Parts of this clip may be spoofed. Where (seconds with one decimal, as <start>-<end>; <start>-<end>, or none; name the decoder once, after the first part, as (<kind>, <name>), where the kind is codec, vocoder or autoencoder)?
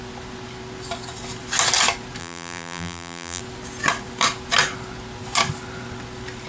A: 2.2-3.4 (vocoder, BigVGAN v2)